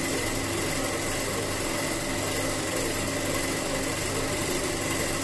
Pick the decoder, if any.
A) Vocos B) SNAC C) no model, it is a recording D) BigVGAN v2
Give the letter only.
C